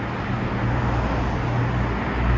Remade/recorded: recorded